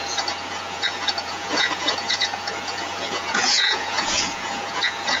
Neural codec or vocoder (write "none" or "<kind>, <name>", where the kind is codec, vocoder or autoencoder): vocoder, Vocos